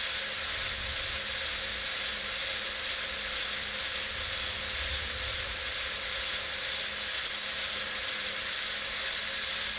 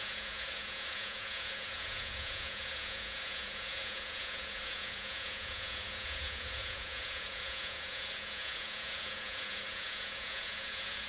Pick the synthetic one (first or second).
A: second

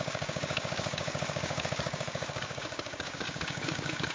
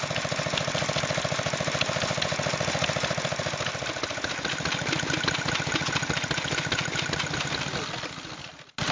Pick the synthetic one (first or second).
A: first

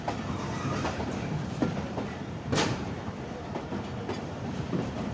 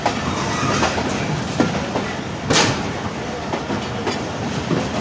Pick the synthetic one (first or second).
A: first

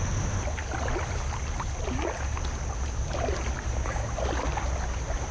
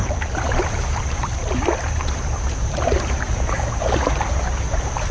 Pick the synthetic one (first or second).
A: second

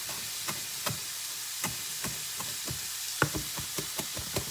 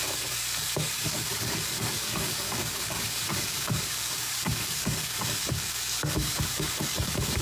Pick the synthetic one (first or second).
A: second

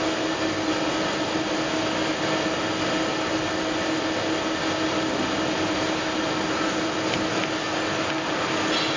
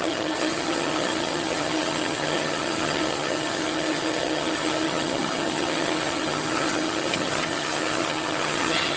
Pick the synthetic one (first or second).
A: second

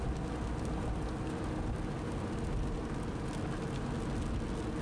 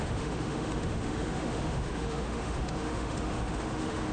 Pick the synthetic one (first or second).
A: second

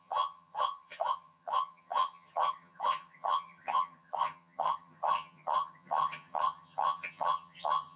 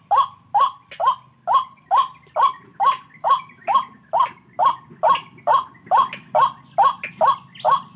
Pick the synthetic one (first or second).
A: first